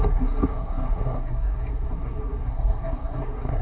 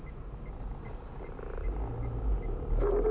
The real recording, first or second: second